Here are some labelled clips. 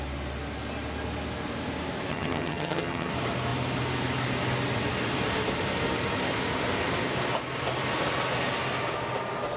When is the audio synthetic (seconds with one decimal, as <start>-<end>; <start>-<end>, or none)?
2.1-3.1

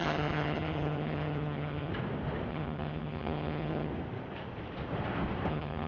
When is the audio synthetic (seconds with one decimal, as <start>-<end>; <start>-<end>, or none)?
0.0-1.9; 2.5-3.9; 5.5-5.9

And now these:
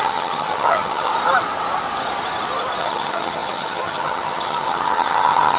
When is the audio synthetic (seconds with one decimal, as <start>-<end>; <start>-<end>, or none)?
0.0-1.1; 2.8-5.6